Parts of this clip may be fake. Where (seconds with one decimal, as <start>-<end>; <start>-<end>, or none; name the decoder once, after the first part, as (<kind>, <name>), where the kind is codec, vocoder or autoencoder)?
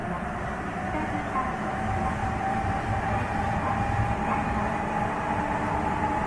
none